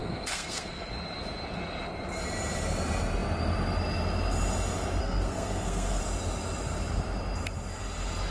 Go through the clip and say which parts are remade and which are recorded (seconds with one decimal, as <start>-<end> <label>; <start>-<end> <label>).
0.0-0.9 remade; 0.9-5.0 recorded; 5.0-6.0 remade; 6.0-8.3 recorded